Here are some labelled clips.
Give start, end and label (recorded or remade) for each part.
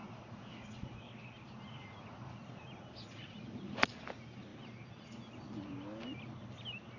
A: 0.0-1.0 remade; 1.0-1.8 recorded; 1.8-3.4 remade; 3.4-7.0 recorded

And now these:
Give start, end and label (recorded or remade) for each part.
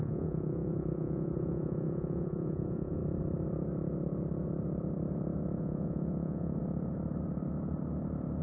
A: 0.0-3.0 remade; 3.0-5.6 recorded; 5.6-6.6 remade; 6.6-8.4 recorded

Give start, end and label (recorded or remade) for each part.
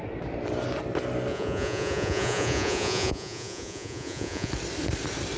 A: 0.0-1.3 recorded; 1.3-4.5 remade; 4.5-5.4 recorded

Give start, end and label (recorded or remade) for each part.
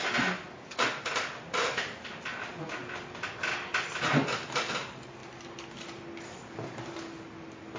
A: 0.0-7.8 recorded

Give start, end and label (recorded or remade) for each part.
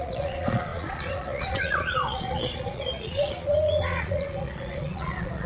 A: 0.0-5.5 remade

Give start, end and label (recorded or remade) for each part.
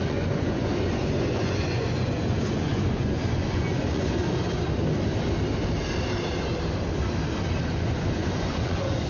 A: 0.0-4.2 remade; 4.2-7.7 recorded; 7.7-9.1 remade